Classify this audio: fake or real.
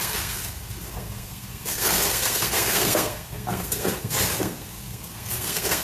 fake